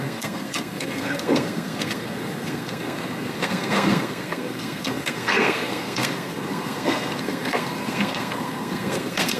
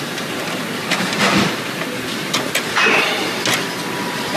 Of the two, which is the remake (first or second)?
first